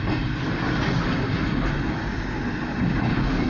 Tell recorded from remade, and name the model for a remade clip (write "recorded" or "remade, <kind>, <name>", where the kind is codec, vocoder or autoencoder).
recorded